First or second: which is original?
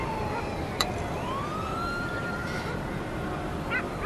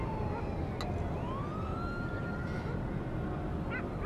second